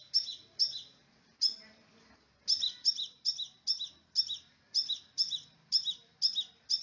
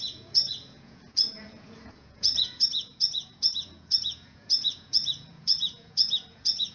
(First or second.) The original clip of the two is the first